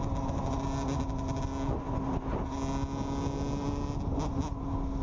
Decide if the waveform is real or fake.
real